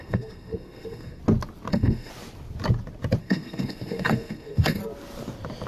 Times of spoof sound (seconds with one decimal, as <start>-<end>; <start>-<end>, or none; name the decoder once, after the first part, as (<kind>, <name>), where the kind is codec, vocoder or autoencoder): 0.0-1.2 (codec, SNAC); 1.7-2.1; 3.2-4.8